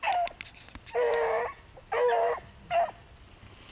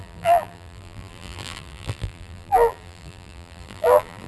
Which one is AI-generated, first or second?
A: second